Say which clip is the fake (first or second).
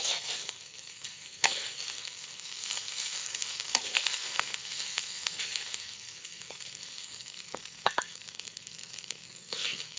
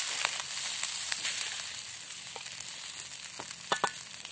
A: first